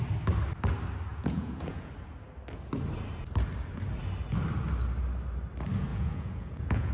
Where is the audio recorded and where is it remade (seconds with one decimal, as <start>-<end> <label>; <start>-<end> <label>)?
0.0-1.1 recorded; 1.1-1.9 remade; 1.9-5.9 recorded; 5.9-6.9 remade